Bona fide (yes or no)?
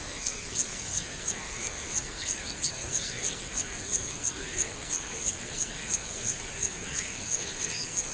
no